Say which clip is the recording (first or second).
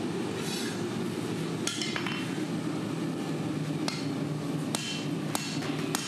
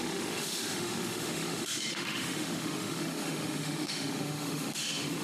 first